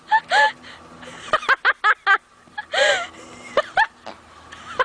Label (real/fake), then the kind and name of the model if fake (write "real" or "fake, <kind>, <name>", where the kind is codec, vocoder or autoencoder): real